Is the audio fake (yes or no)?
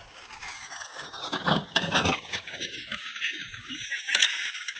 yes